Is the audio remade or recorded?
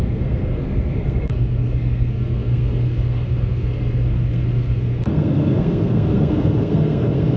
remade